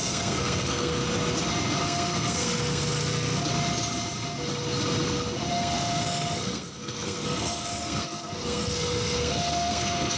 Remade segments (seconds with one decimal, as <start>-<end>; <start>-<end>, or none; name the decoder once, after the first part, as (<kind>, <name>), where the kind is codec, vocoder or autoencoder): 0.0-1.0 (codec, SNAC); 1.8-3.4; 5.5-10.2